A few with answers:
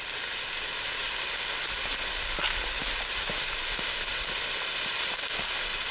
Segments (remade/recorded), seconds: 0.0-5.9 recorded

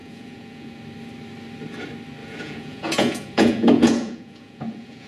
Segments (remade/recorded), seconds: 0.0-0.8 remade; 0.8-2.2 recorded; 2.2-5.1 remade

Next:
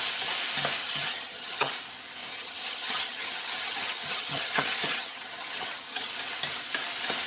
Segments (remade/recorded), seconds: 0.0-0.8 recorded; 0.8-1.7 remade; 1.7-2.3 recorded; 2.3-6.1 remade; 6.1-7.3 recorded

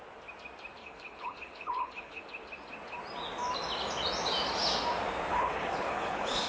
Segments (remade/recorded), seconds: 0.0-0.8 recorded; 0.8-2.2 remade; 2.2-5.3 recorded; 5.3-6.5 remade

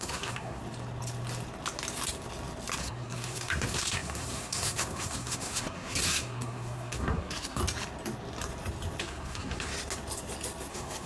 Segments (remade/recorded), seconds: 0.0-0.6 remade; 0.6-2.8 recorded; 2.8-7.6 remade; 7.6-9.0 recorded; 9.0-9.7 remade; 9.7-10.7 recorded; 10.7-11.1 remade